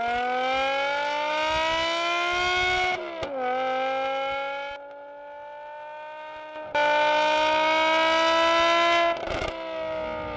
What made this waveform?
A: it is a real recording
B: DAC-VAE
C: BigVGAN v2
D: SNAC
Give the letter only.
A